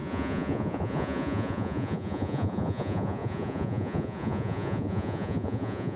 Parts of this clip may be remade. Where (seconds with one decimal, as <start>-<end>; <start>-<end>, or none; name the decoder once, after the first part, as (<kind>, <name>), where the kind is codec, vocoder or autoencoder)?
0.0-6.0 (vocoder, Vocos)